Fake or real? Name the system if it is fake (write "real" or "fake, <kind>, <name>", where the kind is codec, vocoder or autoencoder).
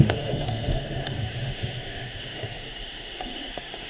fake, autoencoder, DAC-VAE